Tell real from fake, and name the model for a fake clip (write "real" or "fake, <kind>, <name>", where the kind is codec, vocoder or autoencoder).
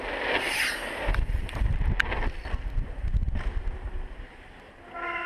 real